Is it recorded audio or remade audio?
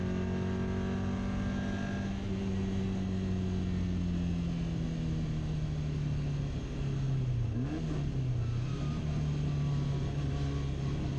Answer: recorded